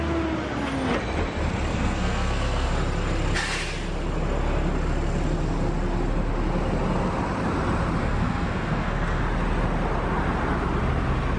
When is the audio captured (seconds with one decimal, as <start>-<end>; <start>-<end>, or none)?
0.0-1.7; 2.7-8.0; 9.2-11.4